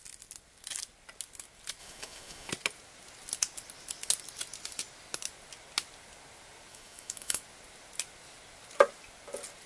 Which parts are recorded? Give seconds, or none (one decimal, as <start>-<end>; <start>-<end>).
0.0-1.8; 2.5-6.7; 7.4-9.7